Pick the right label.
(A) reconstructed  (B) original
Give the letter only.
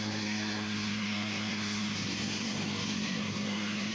A